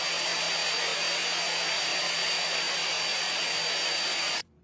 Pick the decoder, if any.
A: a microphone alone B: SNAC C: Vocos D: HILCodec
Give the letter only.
A